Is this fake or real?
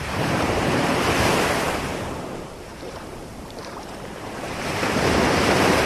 fake